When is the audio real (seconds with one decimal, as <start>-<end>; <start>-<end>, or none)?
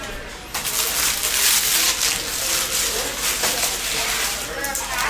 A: 0.0-5.1